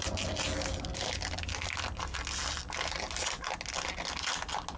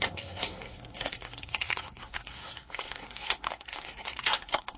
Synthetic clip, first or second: second